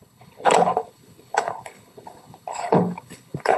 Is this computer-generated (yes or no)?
yes